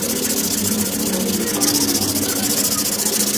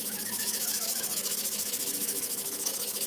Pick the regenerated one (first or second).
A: second